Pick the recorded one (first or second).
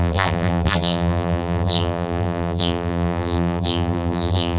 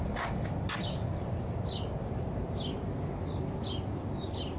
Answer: second